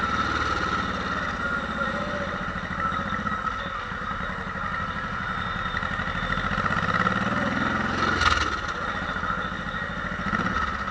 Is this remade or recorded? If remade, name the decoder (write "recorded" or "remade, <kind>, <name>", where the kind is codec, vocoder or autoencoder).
recorded